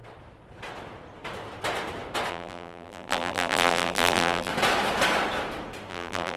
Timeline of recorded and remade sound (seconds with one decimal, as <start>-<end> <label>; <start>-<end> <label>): 0.0-2.3 recorded; 2.3-4.5 remade; 4.5-5.9 recorded; 5.9-6.4 remade